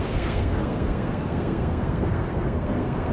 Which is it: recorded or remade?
remade